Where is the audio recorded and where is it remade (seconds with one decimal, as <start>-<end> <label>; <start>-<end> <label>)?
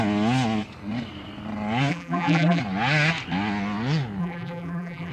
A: 0.0-1.9 recorded; 1.9-2.6 remade; 2.6-4.2 recorded; 4.2-5.1 remade